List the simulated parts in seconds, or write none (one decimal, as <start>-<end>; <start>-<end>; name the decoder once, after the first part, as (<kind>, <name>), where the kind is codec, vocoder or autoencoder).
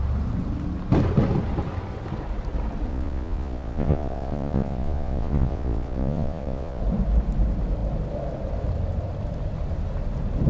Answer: 2.9-6.8 (vocoder, Vocos)